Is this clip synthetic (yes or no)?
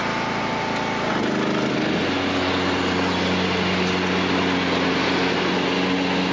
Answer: no